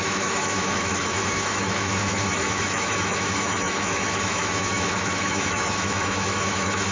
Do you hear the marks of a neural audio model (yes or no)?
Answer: yes